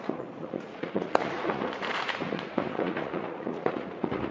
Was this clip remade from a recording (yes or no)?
yes